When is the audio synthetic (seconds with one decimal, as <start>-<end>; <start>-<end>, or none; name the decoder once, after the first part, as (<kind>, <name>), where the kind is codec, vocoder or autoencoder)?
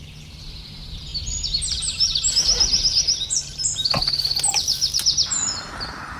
none